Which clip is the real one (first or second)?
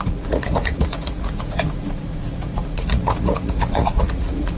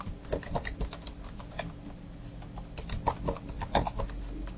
second